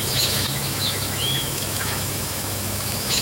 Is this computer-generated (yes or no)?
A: yes